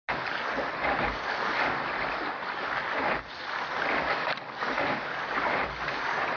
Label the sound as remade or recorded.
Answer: recorded